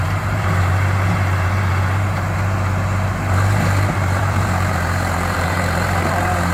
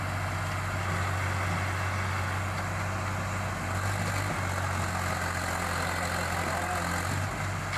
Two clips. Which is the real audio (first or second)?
second